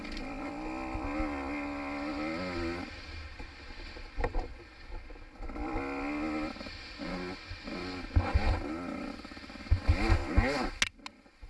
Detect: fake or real real